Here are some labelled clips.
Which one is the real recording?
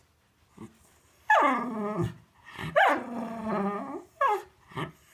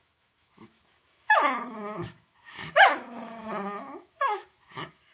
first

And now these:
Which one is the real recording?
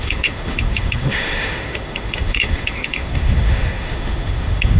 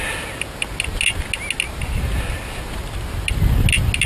second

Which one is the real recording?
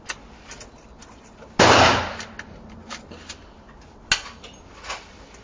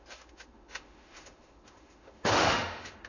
first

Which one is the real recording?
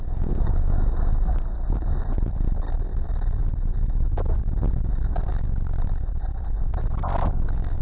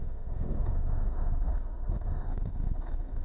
first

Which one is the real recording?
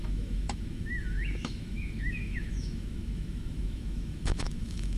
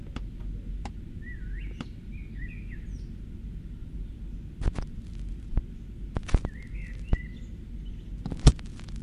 second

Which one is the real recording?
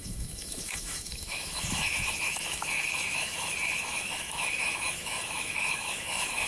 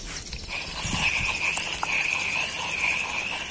second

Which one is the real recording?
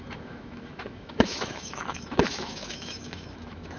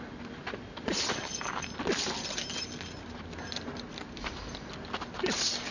second